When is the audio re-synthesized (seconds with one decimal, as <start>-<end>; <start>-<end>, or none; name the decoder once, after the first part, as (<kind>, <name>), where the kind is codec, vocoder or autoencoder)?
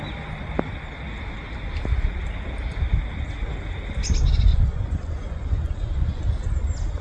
4.5-6.2 (vocoder, Vocos)